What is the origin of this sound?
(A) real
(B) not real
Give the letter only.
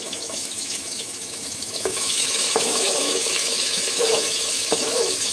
B